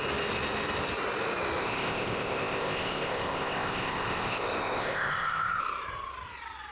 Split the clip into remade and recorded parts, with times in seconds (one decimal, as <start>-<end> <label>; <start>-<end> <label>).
0.0-1.6 recorded; 1.6-5.6 remade; 5.6-6.7 recorded